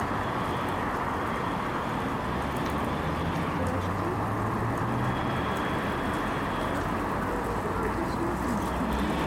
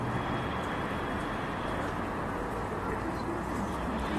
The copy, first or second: second